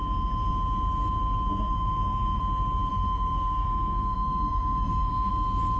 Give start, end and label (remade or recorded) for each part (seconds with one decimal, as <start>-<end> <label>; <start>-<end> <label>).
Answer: 0.0-1.5 recorded; 1.5-2.4 remade; 2.4-2.9 recorded; 2.9-5.3 remade; 5.3-5.8 recorded